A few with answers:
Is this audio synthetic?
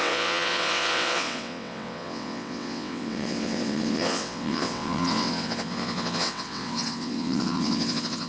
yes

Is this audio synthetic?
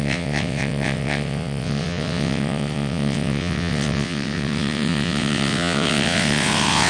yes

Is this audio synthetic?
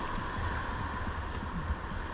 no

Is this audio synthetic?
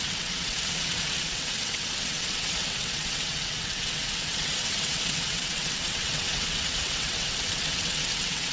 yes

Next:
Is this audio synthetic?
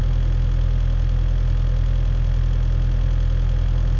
no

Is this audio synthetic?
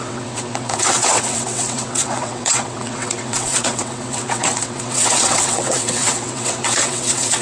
yes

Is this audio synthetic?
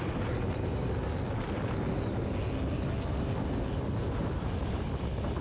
no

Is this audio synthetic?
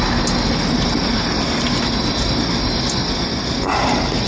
no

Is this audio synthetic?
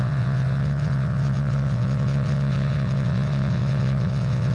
yes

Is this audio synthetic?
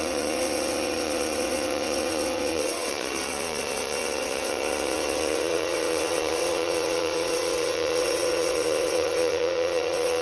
yes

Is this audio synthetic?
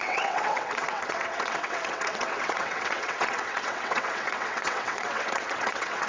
yes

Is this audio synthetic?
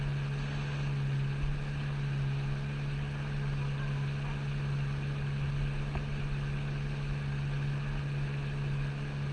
no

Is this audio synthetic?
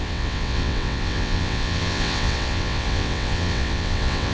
yes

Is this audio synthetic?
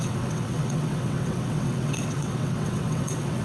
yes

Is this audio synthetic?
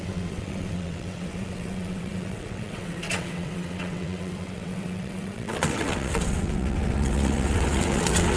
yes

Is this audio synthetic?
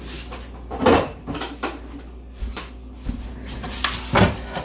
no